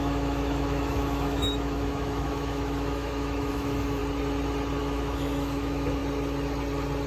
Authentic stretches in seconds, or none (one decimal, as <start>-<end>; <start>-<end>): 4.0-4.8; 6.0-7.1